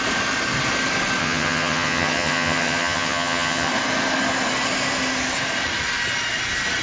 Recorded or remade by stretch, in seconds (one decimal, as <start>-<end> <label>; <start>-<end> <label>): 0.0-1.2 recorded; 1.2-3.7 remade; 3.7-6.8 recorded